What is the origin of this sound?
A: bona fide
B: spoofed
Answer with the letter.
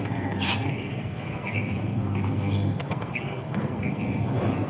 B